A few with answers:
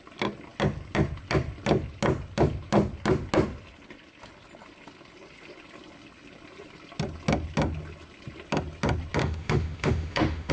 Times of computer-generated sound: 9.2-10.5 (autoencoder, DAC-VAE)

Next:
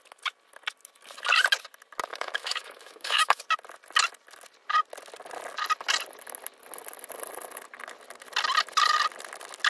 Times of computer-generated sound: 2.1-3.4 (autoencoder, DAC-VAE)

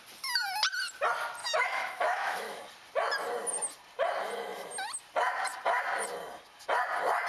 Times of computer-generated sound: 1.4-2.6 (autoencoder, DAC-VAE)

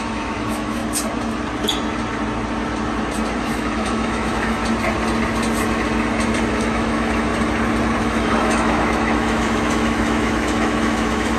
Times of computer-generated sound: 0.0-0.8 (autoencoder, DAC-VAE); 3.4-4.6; 6.5-7.3; 8.0-11.4

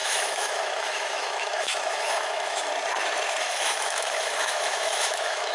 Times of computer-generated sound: 0.0-2.7 (autoencoder, DAC-VAE); 3.4-5.5

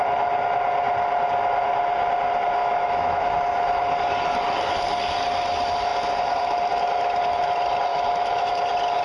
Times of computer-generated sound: 2.6-3.2 (autoencoder, DAC-VAE); 7.9-8.5